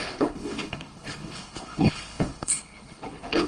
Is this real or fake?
fake